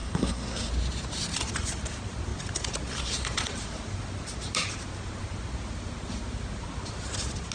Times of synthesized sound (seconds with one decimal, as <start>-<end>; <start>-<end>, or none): 0.0-0.7

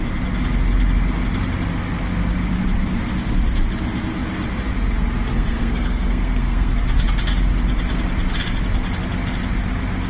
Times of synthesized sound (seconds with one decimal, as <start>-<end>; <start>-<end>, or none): 5.3-6.7